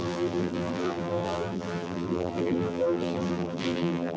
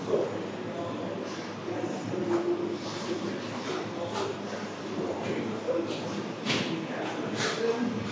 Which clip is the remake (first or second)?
first